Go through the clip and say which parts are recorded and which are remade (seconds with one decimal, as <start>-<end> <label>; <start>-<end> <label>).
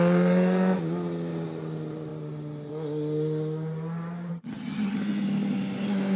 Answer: 0.0-4.3 recorded; 4.3-5.0 remade; 5.0-6.2 recorded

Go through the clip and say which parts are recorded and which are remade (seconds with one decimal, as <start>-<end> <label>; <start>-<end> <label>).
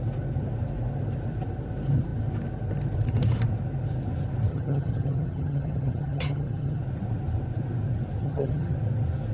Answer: 0.0-4.5 recorded; 4.5-6.8 remade; 6.8-8.2 recorded; 8.2-8.7 remade; 8.7-9.3 recorded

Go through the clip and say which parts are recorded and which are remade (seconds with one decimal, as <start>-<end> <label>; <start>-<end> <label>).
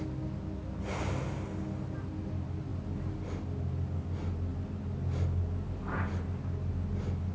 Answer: 0.0-7.3 recorded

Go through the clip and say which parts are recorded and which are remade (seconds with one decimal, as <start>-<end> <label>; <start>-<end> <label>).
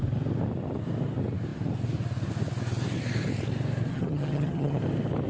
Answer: 0.0-3.9 recorded; 3.9-4.8 remade; 4.8-5.3 recorded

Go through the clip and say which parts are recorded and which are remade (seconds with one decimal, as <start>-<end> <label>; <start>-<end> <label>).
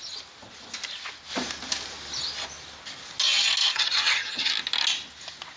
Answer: 0.0-3.6 recorded; 3.6-4.5 remade; 4.5-5.6 recorded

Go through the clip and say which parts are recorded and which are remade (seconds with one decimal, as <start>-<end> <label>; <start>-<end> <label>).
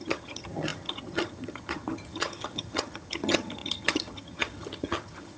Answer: 0.0-5.4 remade